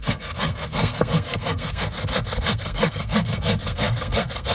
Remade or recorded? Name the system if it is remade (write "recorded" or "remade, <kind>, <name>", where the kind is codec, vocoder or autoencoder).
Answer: remade, codec, SNAC